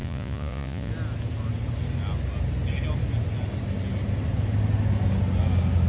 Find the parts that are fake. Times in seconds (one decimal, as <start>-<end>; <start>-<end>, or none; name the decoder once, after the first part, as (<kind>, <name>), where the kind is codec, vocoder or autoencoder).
0.0-0.9 (vocoder, Vocos)